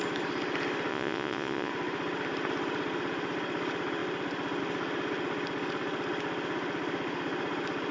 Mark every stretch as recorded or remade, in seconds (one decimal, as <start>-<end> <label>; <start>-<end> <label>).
0.0-0.9 recorded; 0.9-1.7 remade; 1.7-7.9 recorded